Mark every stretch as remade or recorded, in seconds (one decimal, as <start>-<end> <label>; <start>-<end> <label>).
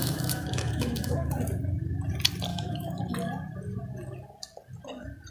0.0-1.3 remade; 1.3-2.5 recorded; 2.5-3.0 remade; 3.0-5.3 recorded